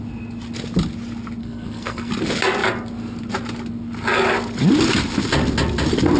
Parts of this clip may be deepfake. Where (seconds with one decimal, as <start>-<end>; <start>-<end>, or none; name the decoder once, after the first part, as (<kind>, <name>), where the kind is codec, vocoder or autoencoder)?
1.4-2.1 (codec, SNAC)